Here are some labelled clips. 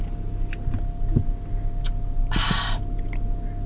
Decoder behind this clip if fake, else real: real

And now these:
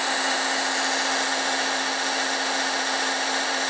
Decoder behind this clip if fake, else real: real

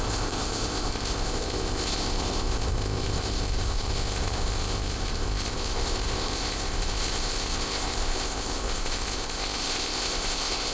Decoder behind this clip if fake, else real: fake, codec, ZipCodec